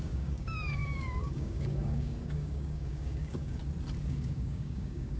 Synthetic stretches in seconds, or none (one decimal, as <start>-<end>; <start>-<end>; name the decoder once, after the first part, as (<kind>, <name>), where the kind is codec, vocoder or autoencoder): 0.0-3.6 (codec, DAC); 4.1-5.2